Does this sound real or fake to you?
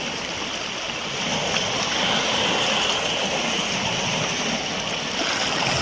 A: real